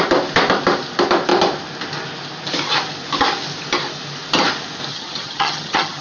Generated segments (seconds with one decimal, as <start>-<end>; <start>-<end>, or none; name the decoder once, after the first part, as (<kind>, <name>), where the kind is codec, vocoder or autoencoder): 4.9-6.0 (vocoder, HiFi-GAN)